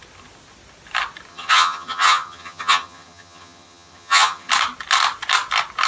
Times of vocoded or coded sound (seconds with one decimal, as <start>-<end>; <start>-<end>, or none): 1.3-4.5